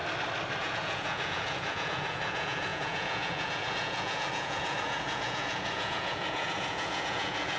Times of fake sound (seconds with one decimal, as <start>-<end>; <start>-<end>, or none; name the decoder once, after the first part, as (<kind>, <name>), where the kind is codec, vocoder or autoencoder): 0.6-7.6 (vocoder, Vocos)